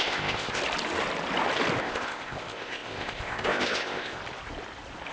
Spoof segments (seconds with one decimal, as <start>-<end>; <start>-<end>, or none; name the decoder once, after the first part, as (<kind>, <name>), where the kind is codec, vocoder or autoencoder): 0.0-0.6 (codec, ZipCodec); 1.8-4.2

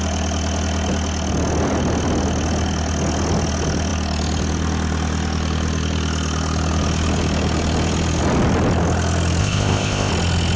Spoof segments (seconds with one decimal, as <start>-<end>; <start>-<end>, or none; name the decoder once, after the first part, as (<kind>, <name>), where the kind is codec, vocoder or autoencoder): 9.4-10.1 (codec, ZipCodec)